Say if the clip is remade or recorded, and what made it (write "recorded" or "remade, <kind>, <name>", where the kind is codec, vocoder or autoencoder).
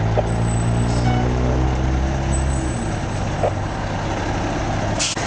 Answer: recorded